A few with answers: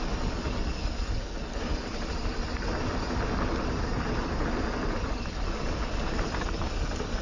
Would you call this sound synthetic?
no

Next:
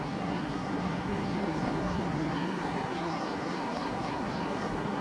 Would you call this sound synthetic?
yes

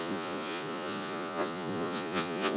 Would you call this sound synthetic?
yes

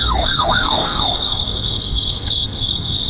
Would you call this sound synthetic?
yes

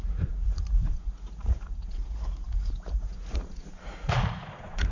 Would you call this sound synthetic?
yes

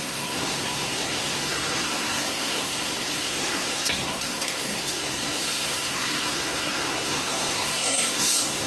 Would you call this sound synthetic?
yes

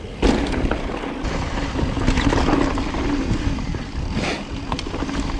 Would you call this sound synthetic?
no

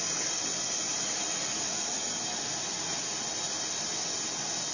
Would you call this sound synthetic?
no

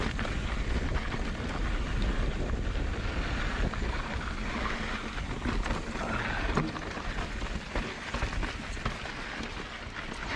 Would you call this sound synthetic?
no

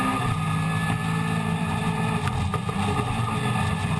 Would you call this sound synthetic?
no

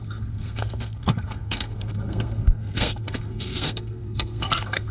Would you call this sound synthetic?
yes